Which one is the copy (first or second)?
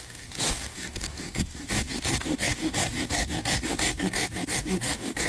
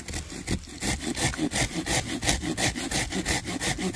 first